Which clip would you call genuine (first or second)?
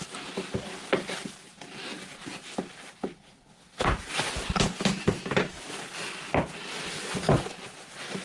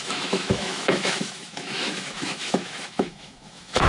first